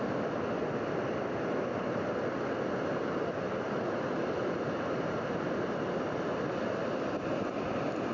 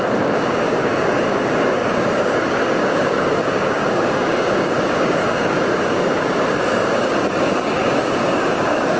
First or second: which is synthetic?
second